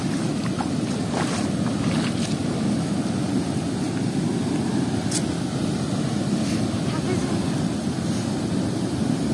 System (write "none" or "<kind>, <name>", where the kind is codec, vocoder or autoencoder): none